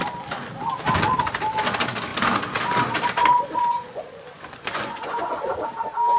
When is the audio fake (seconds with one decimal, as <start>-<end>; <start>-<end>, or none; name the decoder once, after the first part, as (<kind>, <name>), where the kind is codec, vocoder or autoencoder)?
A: 3.2-5.4 (vocoder, Vocos)